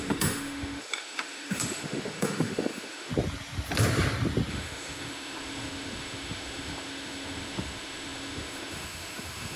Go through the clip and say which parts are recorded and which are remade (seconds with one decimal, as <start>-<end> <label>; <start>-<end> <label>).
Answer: 0.0-3.1 remade; 3.1-4.5 recorded; 4.5-9.6 remade